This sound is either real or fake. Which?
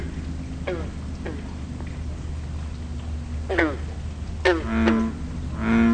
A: real